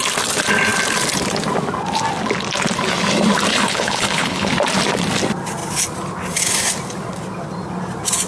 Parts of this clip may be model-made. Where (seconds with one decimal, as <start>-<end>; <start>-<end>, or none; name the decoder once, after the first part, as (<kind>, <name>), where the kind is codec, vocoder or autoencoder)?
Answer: 3.5-4.5 (codec, HILCodec)